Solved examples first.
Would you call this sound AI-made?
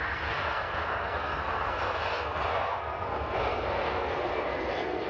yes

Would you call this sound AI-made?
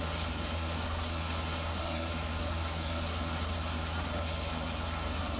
yes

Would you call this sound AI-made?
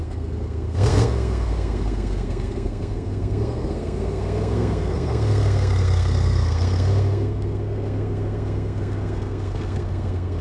yes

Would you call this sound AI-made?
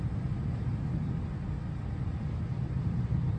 no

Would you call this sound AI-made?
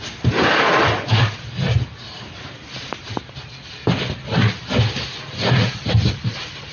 no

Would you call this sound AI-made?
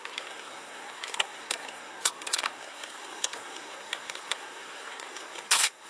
yes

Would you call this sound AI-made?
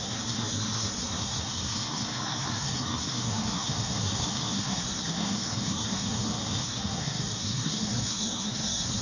yes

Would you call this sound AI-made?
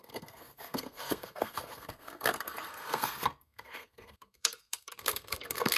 yes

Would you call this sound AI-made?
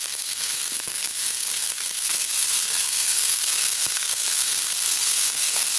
yes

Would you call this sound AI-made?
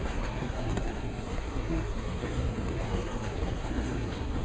yes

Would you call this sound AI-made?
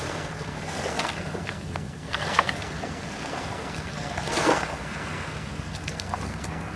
yes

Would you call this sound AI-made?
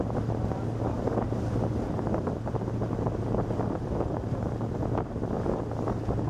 no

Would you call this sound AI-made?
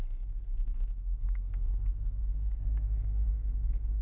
yes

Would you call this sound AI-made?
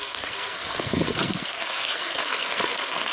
yes